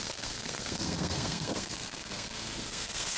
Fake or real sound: fake